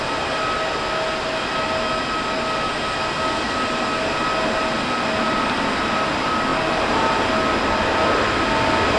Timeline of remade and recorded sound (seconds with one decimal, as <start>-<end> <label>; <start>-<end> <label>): 0.0-9.0 recorded